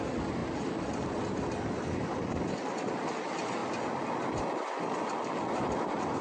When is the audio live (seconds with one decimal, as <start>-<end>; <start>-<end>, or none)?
0.0-6.2